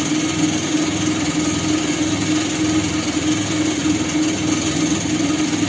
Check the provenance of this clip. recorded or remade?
recorded